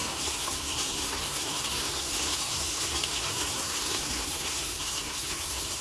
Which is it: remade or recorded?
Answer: remade